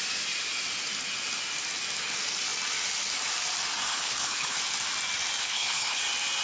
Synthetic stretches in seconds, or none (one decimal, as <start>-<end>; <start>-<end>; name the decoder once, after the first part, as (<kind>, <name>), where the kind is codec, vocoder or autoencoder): 3.9-4.6 (codec, HILCodec); 5.4-6.0